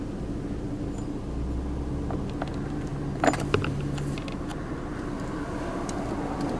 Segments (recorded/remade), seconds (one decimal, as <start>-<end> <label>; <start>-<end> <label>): 0.0-2.9 recorded; 2.9-4.1 remade; 4.1-4.5 recorded; 4.5-5.6 remade; 5.6-6.6 recorded